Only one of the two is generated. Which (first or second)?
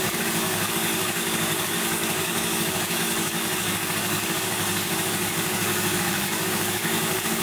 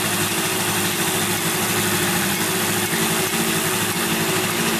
first